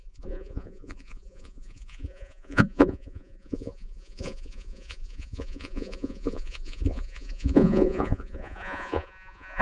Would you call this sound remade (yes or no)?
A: yes